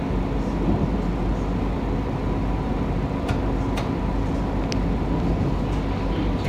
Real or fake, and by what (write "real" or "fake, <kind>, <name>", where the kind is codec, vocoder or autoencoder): real